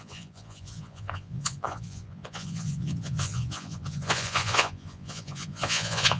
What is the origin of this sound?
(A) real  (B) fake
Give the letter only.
B